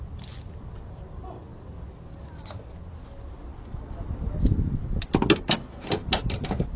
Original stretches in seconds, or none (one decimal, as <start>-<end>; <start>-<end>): 0.0-6.8